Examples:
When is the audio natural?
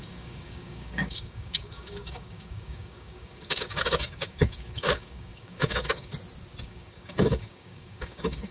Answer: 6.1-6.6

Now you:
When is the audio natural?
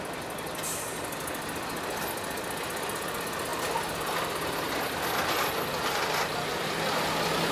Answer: 0.0-7.5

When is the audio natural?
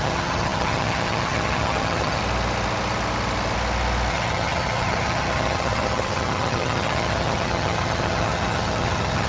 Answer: 2.2-4.1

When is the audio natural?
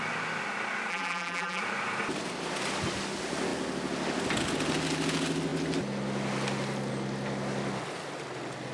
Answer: 0.0-0.9; 1.6-8.7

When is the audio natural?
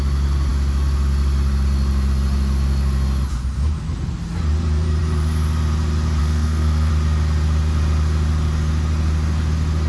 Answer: 0.0-6.2; 6.9-9.9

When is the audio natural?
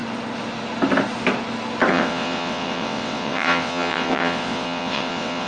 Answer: 0.0-1.9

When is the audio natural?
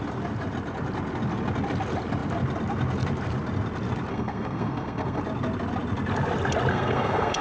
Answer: 0.0-4.1; 5.2-6.7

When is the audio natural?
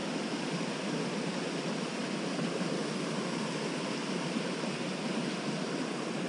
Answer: 0.0-6.3